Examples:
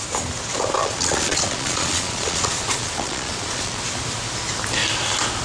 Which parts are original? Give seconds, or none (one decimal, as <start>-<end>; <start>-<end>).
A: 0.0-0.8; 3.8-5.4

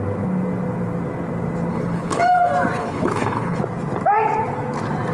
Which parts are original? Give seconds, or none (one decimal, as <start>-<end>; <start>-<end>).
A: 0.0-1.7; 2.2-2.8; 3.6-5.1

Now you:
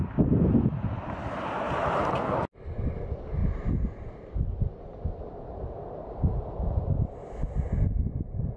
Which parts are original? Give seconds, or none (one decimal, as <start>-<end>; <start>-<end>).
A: 0.0-8.6

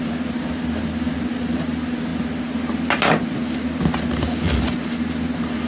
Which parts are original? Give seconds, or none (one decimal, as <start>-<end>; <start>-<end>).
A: 0.0-5.7

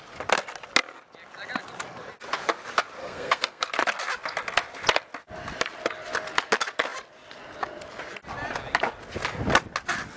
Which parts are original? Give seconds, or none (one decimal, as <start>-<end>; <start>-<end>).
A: 0.0-3.0; 3.6-10.2

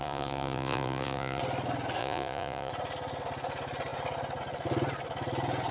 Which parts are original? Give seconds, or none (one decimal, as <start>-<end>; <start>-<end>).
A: 1.4-2.0; 2.7-5.7